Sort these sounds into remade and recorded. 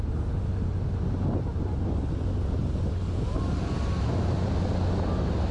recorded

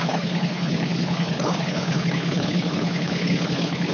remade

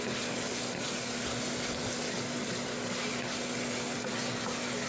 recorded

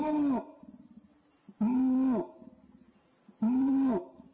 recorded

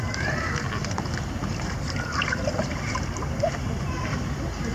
recorded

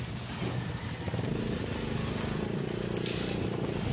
recorded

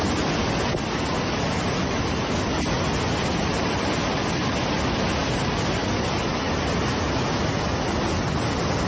recorded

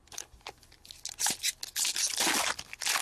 recorded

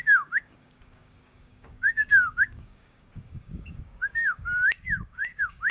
remade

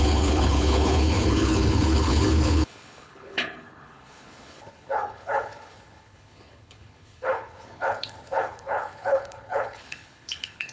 remade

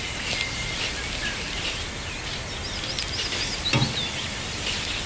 recorded